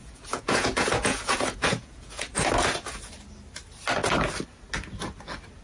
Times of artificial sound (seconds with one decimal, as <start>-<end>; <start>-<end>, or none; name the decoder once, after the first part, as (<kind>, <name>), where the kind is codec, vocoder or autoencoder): 0.0-2.5 (vocoder, Vocos)